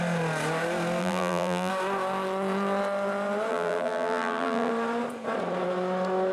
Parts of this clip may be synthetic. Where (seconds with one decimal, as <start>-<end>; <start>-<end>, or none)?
1.0-1.7; 3.5-4.7